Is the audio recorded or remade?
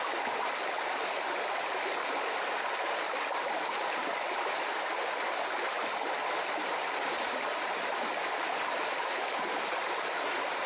recorded